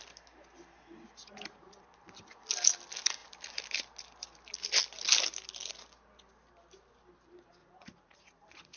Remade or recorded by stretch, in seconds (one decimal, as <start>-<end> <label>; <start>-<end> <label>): 0.0-7.6 recorded; 7.6-8.8 remade